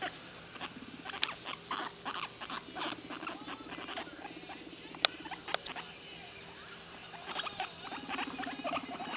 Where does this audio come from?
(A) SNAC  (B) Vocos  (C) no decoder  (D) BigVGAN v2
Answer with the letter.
C